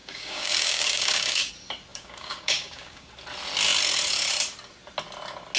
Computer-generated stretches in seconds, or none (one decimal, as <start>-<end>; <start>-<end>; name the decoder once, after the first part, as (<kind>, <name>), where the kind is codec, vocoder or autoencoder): 0.0-1.5 (codec, DAC); 1.9-3.1